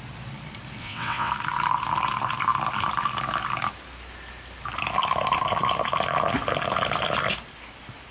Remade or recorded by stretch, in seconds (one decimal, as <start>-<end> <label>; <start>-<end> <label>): 0.0-0.8 recorded; 0.8-1.3 remade; 1.3-8.1 recorded